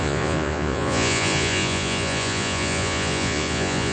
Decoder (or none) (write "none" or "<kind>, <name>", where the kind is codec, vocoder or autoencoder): vocoder, Vocos